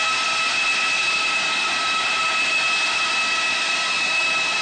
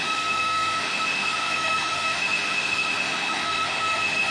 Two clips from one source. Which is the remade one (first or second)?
second